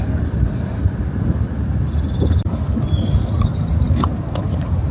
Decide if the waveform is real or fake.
fake